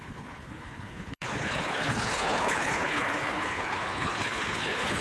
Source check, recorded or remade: remade